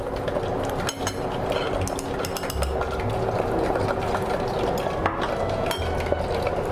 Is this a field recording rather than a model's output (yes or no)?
yes